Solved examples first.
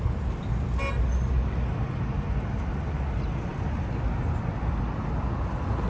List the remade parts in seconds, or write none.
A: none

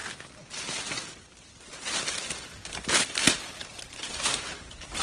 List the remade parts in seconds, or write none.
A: 3.6-5.0

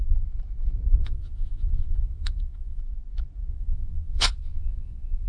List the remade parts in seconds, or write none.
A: 1.0-2.8; 3.5-5.3

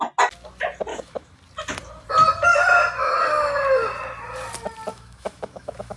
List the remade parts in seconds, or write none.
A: 0.9-1.4; 4.9-6.0

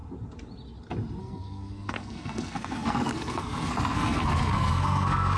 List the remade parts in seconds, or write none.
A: 1.2-5.4

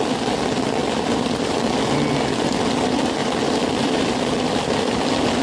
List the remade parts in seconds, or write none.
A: 0.8-1.9; 3.2-4.8